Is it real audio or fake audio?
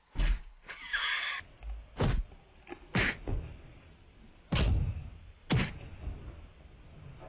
real